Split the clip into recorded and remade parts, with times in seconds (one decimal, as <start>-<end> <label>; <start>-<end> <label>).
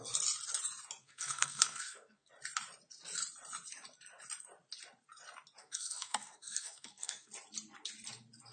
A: 0.0-1.0 recorded; 1.0-2.3 remade; 2.3-5.6 recorded; 5.6-7.3 remade; 7.3-8.5 recorded